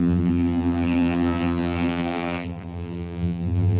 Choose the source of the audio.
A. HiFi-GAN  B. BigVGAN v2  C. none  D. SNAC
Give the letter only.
B